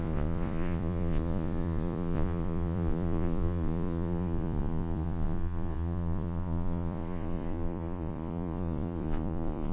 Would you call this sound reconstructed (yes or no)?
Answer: yes